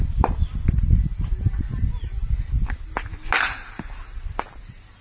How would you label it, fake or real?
real